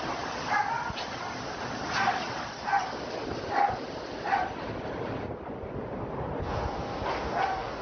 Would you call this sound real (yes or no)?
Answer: yes